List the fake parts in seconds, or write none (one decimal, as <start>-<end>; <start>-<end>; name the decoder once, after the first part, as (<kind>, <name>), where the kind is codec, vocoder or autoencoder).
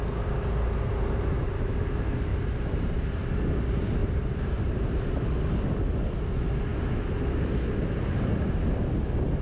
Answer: 2.3-3.2 (vocoder, BigVGAN v2); 4.0-5.1